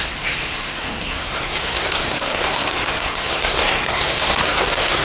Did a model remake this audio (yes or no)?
yes